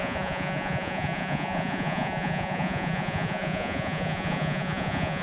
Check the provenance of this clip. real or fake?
fake